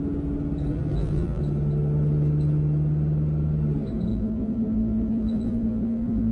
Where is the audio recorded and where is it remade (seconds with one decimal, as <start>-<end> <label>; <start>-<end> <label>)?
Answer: 0.0-0.7 recorded; 0.7-1.4 remade; 1.4-4.1 recorded; 4.1-6.3 remade